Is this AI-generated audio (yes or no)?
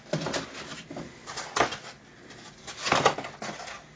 no